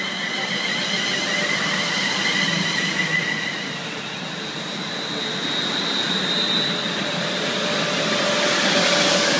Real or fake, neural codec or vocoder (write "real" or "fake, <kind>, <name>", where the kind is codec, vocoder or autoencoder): real